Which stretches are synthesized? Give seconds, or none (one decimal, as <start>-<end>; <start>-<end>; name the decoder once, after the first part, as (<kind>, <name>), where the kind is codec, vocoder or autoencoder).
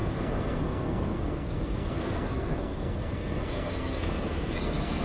0.0-5.0 (codec, SNAC)